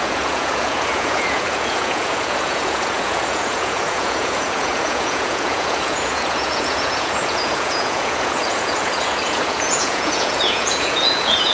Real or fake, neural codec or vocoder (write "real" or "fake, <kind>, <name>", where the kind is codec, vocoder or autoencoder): fake, vocoder, Vocos